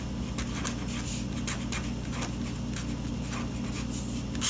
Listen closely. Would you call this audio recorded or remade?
recorded